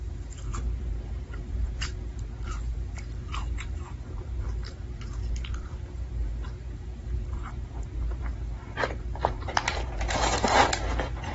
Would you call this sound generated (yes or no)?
yes